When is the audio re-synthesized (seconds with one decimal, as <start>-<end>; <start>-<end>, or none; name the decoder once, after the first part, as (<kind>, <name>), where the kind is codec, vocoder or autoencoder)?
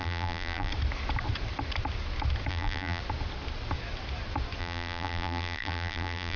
0.0-0.7 (vocoder, BigVGAN v2); 2.5-3.0; 4.6-6.4